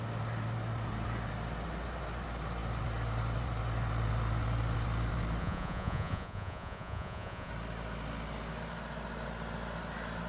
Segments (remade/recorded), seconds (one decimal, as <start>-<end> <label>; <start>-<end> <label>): 0.0-5.4 recorded; 5.4-7.5 remade; 7.5-10.3 recorded